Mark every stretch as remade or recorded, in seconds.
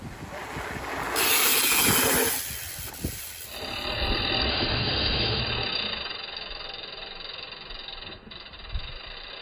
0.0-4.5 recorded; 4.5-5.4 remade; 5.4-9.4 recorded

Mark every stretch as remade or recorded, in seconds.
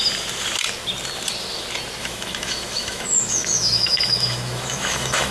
0.0-2.0 recorded; 2.0-5.3 remade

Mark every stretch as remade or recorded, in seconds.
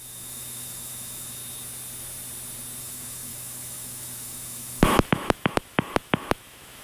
0.0-1.4 remade; 1.4-2.8 recorded; 2.8-6.8 remade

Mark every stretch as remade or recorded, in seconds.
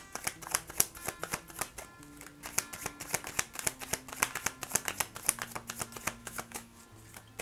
0.0-6.2 recorded; 6.2-6.8 remade; 6.8-7.4 recorded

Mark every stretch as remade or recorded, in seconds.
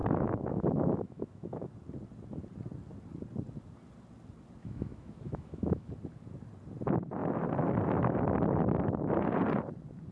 0.0-1.7 remade; 1.7-4.6 recorded; 4.6-5.9 remade; 5.9-10.1 recorded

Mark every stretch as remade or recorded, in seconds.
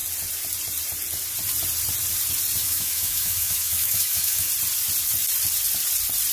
0.0-2.6 recorded; 2.6-4.5 remade; 4.5-6.3 recorded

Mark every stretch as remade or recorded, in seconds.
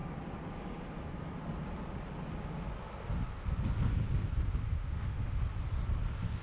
0.0-4.6 recorded; 4.6-5.4 remade; 5.4-6.4 recorded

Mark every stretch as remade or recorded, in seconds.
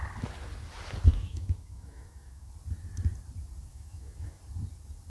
0.0-1.1 recorded; 1.1-2.5 remade; 2.5-3.7 recorded; 3.7-4.4 remade; 4.4-5.1 recorded